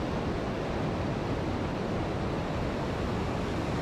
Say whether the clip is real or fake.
real